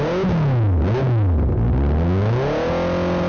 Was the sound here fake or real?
real